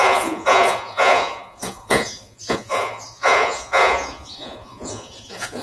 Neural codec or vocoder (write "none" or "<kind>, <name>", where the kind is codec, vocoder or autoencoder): vocoder, Vocos